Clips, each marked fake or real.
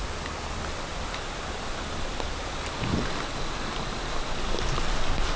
real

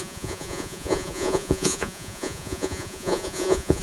fake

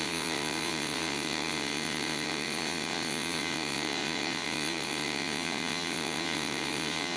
fake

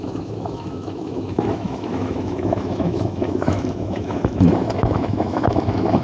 fake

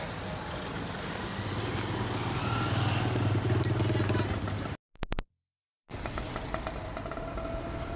real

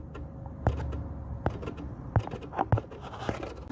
real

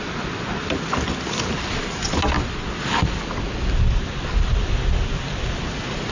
real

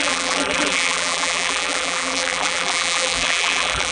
fake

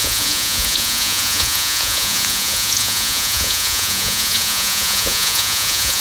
fake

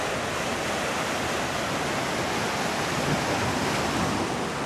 real